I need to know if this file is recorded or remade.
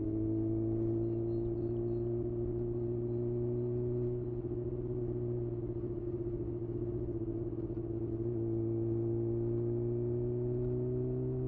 recorded